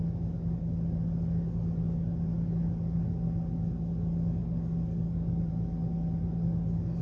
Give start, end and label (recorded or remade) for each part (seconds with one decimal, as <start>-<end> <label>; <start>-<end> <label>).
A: 0.0-4.4 recorded; 4.4-5.5 remade; 5.5-7.0 recorded